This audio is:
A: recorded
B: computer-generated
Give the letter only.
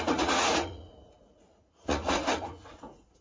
B